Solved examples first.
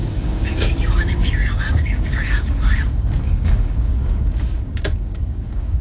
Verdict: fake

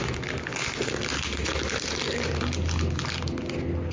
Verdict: real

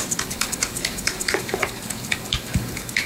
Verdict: fake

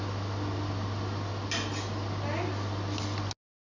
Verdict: real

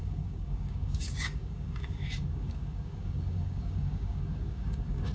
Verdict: fake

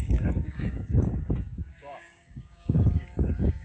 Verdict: fake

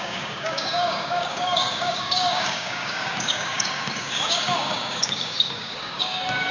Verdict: fake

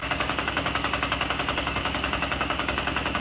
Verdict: fake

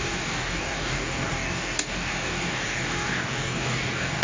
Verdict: fake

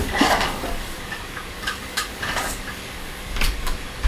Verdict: fake